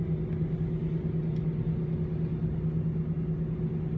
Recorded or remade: recorded